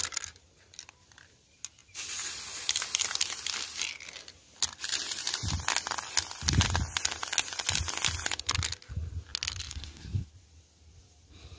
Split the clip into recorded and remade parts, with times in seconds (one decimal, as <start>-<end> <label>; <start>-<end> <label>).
0.0-9.7 recorded; 9.7-10.3 remade; 10.3-11.6 recorded